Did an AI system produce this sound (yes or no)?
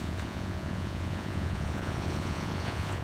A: yes